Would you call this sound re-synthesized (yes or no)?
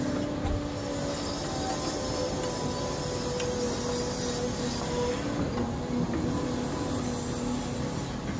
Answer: no